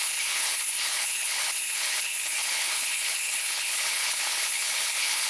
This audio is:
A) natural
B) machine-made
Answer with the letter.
B